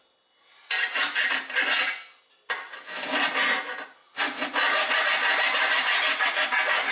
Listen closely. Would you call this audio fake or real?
real